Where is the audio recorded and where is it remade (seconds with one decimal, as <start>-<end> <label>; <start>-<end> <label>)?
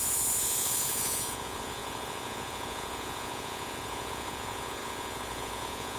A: 0.0-6.0 remade